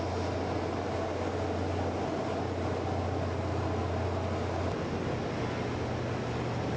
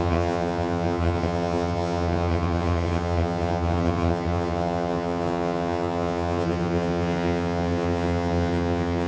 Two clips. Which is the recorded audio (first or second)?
first